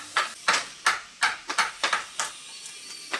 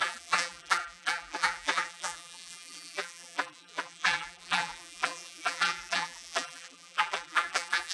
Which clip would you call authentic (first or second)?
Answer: first